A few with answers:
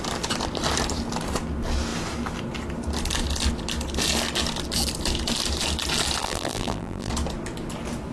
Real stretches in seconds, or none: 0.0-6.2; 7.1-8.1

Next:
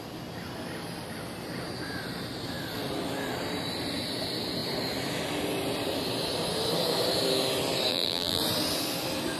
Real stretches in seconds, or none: 0.0-7.9; 8.4-9.4